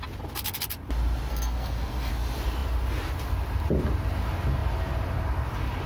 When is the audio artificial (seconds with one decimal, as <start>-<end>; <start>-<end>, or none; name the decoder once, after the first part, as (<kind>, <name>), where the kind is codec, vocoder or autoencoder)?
1.3-2.1 (codec, SNAC)